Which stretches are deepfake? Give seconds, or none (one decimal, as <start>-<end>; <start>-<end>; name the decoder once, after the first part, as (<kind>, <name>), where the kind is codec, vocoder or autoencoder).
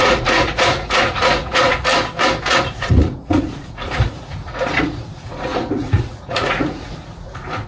0.0-1.9 (vocoder, Vocos); 2.4-7.7